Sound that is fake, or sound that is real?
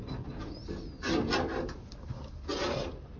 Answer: real